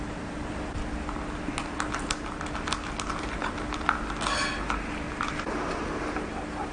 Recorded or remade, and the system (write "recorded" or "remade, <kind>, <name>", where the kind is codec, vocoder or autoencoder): recorded